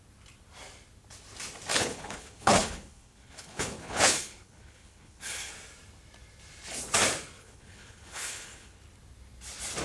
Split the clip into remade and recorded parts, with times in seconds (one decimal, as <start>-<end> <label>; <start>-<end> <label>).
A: 0.0-1.7 recorded; 1.7-5.5 remade; 5.5-7.4 recorded; 7.4-8.8 remade; 8.8-9.8 recorded